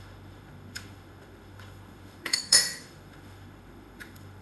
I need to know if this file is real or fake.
fake